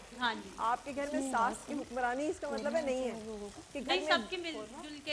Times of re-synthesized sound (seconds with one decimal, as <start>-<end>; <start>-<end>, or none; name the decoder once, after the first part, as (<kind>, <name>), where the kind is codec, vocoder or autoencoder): none